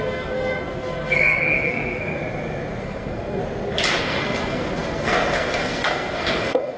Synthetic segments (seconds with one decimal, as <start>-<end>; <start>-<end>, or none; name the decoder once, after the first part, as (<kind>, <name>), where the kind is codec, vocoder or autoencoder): 0.0-2.2 (codec, SNAC); 2.8-3.4; 4.0-6.8